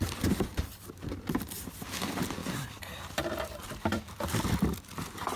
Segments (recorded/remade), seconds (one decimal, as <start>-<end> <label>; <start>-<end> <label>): 0.0-2.4 recorded; 2.4-4.8 remade; 4.8-5.4 recorded